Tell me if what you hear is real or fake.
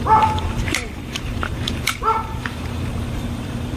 fake